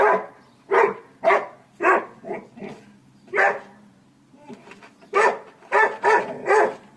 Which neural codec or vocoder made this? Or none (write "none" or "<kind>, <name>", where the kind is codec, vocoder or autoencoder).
none